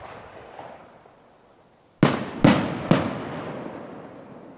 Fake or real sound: real